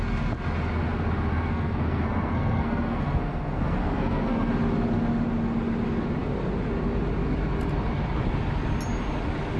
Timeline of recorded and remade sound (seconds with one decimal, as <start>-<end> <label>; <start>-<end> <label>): 0.0-1.3 recorded; 1.3-4.5 remade; 4.5-9.6 recorded